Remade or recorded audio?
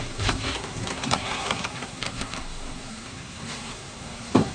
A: remade